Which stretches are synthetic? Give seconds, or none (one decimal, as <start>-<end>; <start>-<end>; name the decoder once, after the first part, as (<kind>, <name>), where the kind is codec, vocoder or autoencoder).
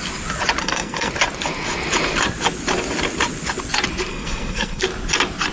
0.6-1.1 (codec, SNAC); 4.1-4.8